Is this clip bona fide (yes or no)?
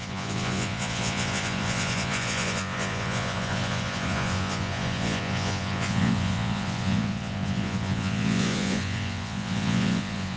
no